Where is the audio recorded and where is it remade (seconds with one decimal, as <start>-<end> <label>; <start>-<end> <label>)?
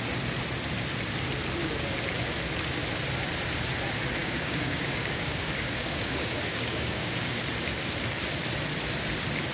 0.0-4.2 recorded; 4.2-7.4 remade; 7.4-9.5 recorded